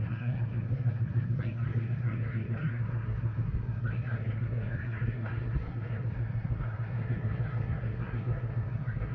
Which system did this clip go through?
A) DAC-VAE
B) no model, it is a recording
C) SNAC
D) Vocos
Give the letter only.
C